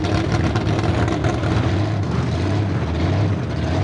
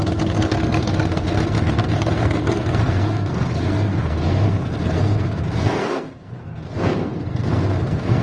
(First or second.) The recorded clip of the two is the first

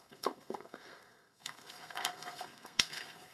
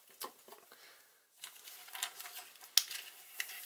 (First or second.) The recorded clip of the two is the second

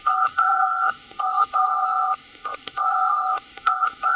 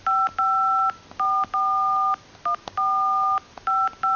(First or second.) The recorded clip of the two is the second